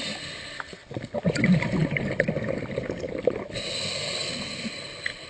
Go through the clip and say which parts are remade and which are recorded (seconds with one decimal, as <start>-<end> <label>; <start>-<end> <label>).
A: 0.0-0.8 recorded; 0.8-1.4 remade; 1.4-5.3 recorded